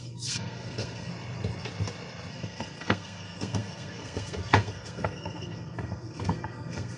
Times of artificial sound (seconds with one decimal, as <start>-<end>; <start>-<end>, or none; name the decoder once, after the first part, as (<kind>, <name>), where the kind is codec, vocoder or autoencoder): 0.0-1.1 (codec, SNAC); 2.3-7.0